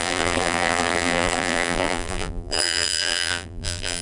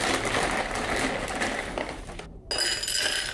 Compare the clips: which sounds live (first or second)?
second